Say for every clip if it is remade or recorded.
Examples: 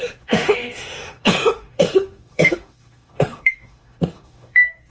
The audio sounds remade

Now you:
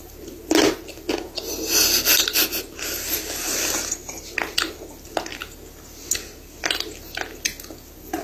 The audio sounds recorded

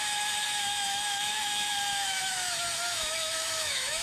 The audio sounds remade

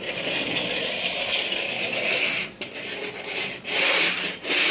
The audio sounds remade